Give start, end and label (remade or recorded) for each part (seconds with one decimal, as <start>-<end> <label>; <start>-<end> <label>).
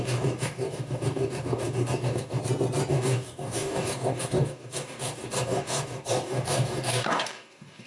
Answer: 0.0-2.4 remade; 2.4-2.9 recorded; 2.9-7.9 remade